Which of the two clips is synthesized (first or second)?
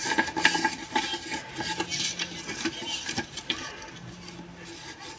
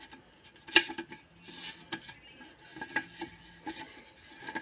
first